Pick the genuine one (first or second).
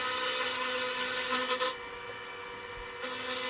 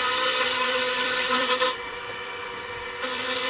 first